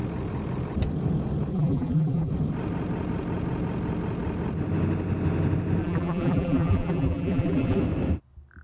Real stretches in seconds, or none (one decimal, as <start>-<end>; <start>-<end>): 0.0-1.5; 2.3-5.8; 7.8-8.6